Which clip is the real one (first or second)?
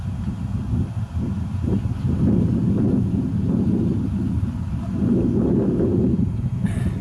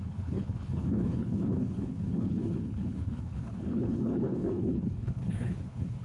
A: first